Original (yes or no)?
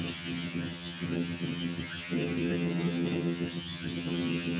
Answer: no